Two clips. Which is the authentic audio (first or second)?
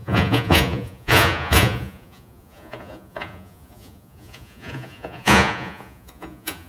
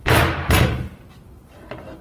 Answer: second